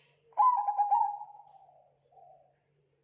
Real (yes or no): no